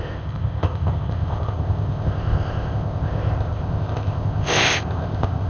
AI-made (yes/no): yes